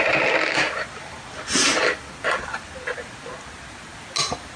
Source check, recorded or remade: recorded